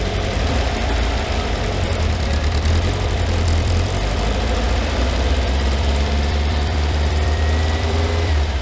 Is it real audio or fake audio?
fake